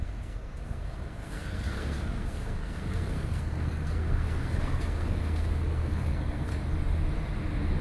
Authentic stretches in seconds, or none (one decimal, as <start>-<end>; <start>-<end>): 6.5-7.8